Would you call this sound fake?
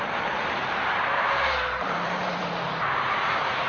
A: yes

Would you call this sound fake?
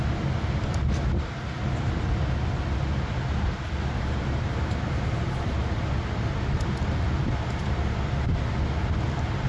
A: no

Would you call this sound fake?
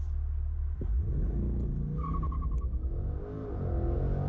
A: no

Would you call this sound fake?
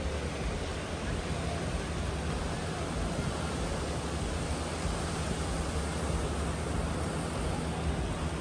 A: no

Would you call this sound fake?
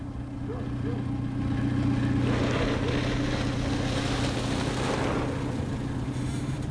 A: no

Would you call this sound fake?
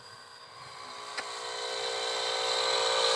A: no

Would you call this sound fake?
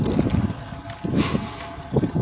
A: no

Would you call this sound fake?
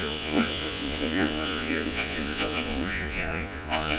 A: yes